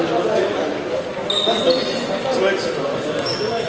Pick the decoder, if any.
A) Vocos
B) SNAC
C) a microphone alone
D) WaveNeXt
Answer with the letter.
C